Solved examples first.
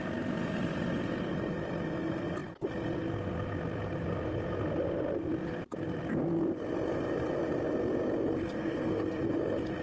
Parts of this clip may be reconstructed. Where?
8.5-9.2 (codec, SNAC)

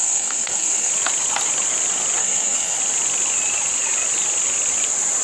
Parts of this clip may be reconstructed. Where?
0.0-0.9 (codec, SNAC); 2.2-2.8

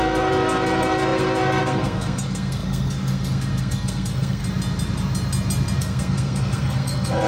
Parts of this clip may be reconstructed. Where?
0.0-4.4 (codec, SNAC); 5.8-7.3